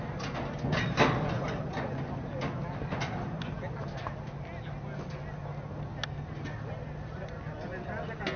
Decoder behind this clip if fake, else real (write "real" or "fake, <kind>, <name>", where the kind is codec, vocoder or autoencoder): real